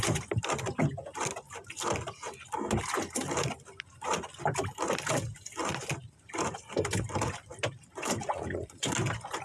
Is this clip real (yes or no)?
yes